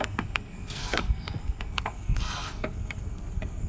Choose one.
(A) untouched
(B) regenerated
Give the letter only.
B